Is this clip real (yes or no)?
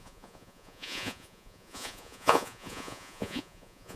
no